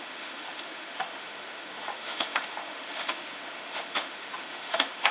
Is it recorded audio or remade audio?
remade